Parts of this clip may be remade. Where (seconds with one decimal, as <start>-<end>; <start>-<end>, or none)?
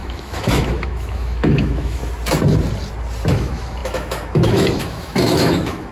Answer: 0.0-2.0; 3.3-5.9